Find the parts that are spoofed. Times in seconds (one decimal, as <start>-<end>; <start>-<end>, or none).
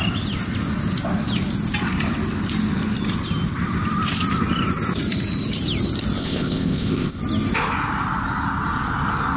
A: 6.2-7.2